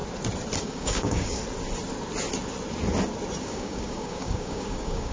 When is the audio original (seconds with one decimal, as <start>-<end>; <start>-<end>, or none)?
0.0-0.6; 1.4-3.4